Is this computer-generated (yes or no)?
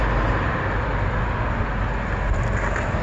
no